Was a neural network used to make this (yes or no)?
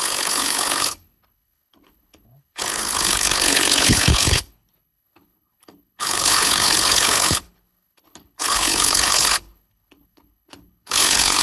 yes